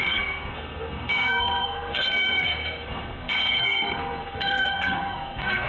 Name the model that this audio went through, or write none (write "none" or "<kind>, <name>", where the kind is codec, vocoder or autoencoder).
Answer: codec, SNAC